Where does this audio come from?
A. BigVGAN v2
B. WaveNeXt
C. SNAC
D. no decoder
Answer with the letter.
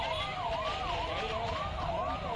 D